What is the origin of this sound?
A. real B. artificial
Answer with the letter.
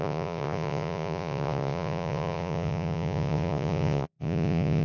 B